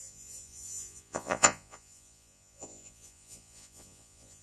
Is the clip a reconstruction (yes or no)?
yes